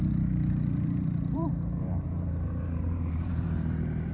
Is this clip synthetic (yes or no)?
yes